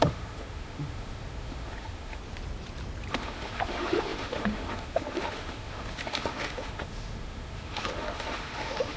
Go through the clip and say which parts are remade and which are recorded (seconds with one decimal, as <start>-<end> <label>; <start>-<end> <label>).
0.0-2.2 remade; 2.2-3.1 recorded; 3.1-9.0 remade